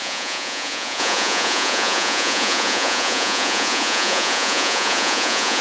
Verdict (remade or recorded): remade